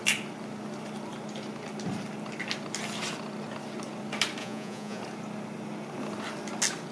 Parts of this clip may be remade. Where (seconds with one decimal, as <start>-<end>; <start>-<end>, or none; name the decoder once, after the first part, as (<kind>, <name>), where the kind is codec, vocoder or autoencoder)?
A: 4.4-5.0 (vocoder, Vocos)